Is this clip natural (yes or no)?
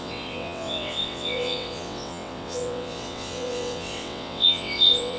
no